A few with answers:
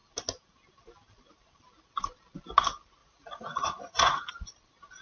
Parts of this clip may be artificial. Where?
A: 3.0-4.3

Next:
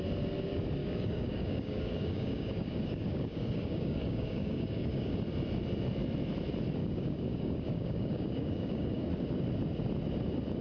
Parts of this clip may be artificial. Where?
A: 0.8-5.1; 6.8-9.1

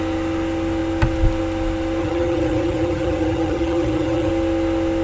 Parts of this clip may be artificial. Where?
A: 2.0-4.3

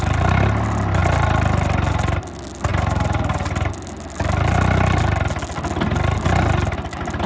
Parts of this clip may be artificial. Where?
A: 2.7-3.7

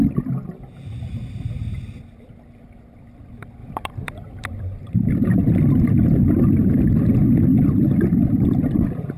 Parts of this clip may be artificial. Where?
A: 3.6-5.0

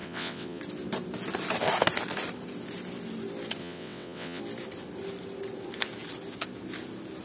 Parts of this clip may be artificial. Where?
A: 0.0-0.6; 3.6-4.4

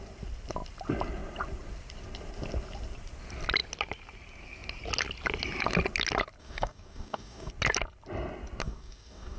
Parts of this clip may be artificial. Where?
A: 6.4-7.5; 8.6-9.4

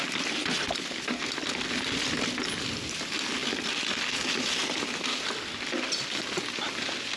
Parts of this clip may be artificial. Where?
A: none